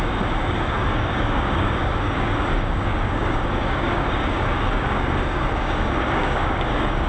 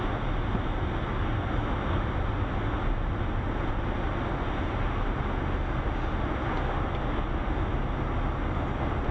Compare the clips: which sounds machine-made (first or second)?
first